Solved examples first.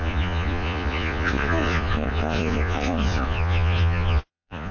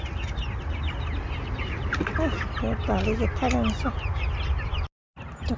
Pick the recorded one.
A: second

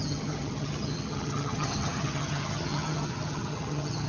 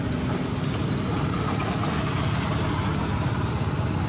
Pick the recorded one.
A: second